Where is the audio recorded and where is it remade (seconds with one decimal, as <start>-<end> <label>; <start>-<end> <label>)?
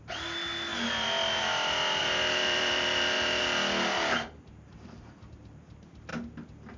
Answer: 0.0-2.0 recorded; 2.0-3.4 remade; 3.4-3.9 recorded; 3.9-5.3 remade; 5.3-6.8 recorded